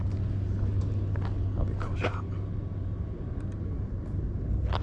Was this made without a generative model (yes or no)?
yes